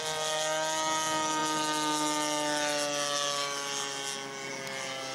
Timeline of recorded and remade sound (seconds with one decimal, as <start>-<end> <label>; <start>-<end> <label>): 0.0-5.1 recorded